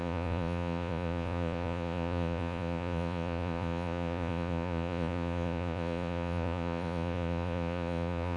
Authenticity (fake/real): fake